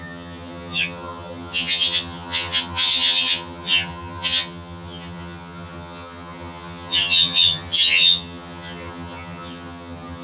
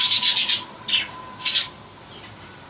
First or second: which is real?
second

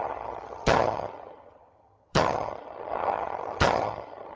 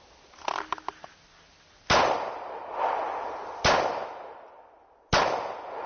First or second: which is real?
second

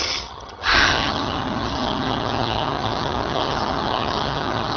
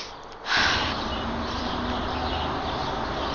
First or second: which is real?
second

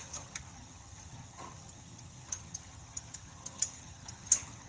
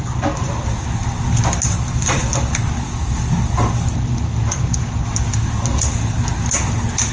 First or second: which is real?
second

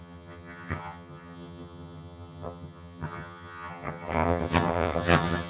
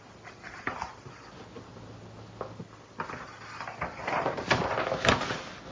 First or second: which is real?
second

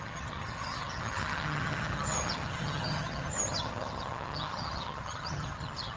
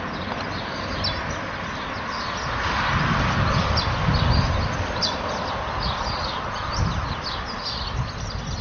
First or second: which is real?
second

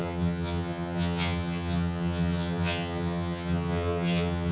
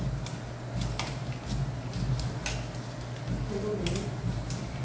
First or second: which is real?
second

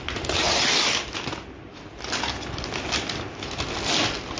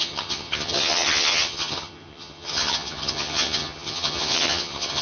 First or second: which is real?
first